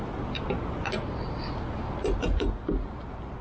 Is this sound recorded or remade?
recorded